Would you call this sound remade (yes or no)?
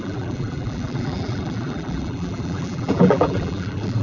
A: yes